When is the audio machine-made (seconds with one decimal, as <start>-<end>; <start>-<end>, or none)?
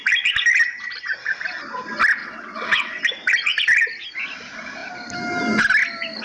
2.2-3.0